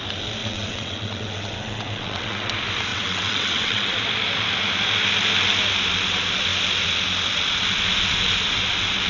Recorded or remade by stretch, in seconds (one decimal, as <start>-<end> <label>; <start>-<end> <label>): 0.0-0.4 recorded; 0.4-2.5 remade; 2.5-2.9 recorded; 2.9-3.9 remade; 3.9-9.1 recorded